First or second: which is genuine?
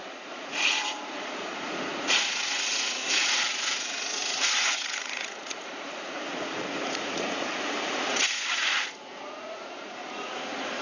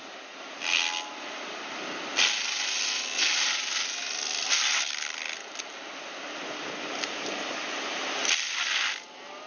second